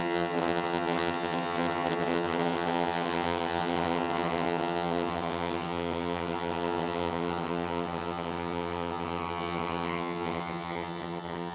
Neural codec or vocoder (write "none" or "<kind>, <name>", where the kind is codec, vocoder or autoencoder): vocoder, HiFi-GAN